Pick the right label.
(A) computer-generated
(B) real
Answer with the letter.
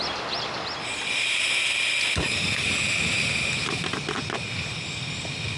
B